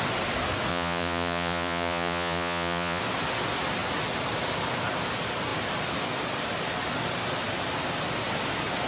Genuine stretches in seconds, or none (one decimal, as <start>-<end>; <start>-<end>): 0.0-0.7; 3.0-8.9